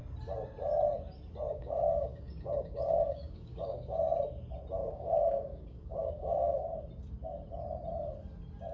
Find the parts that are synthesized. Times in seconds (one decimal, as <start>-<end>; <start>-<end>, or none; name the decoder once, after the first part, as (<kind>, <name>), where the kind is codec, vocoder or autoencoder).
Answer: 1.5-4.0 (codec, DAC); 4.8-6.8